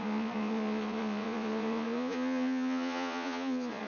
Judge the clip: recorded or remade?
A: remade